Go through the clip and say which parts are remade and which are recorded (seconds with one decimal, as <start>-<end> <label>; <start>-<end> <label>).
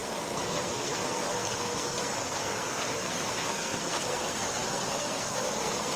0.0-6.0 remade